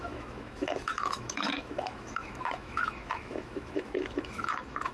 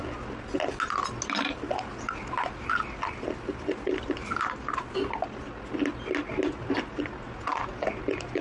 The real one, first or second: second